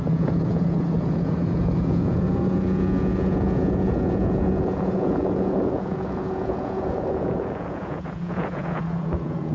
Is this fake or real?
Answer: fake